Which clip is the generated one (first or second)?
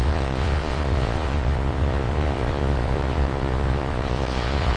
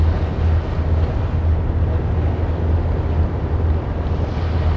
first